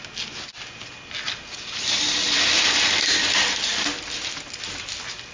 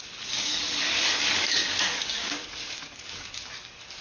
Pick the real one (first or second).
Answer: first